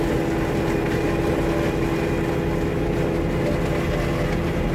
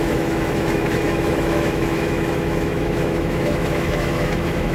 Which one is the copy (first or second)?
second